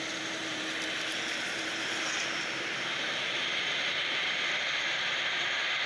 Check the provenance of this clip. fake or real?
fake